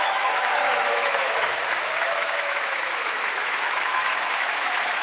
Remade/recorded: remade